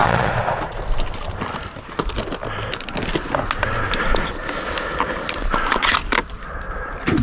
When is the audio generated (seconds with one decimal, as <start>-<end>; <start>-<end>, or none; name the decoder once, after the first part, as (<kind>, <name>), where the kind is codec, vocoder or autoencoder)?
0.0-0.8 (vocoder, Vocos)